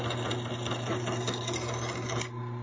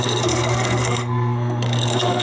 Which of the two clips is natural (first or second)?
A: first